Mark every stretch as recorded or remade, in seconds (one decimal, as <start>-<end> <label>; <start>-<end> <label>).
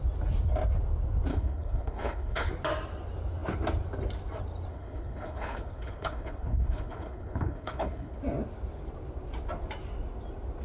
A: 0.0-1.3 recorded; 1.3-2.5 remade; 2.5-4.7 recorded; 4.7-8.2 remade; 8.2-10.6 recorded